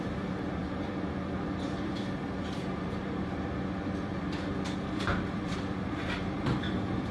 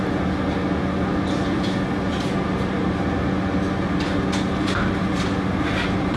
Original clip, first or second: second